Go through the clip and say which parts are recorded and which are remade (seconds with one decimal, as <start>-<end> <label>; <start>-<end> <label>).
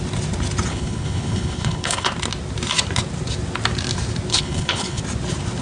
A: 0.0-0.7 recorded; 0.7-2.1 remade; 2.1-4.3 recorded; 4.3-5.0 remade; 5.0-5.6 recorded